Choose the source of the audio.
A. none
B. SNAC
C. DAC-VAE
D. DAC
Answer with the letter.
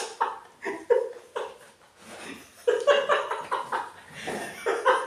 A